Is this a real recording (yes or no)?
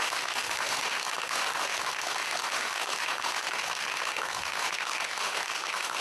no